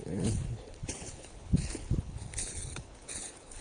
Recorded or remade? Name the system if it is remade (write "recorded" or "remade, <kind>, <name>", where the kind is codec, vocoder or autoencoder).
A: remade, codec, HILCodec